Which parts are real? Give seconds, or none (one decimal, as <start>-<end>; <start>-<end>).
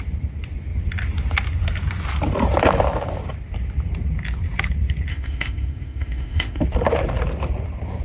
0.0-5.1; 6.6-8.0